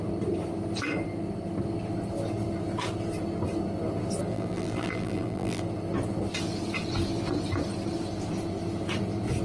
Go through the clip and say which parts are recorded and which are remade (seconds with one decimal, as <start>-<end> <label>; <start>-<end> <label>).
0.0-4.3 recorded; 4.3-5.6 remade; 5.6-9.4 recorded